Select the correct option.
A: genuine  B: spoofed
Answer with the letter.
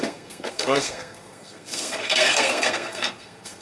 B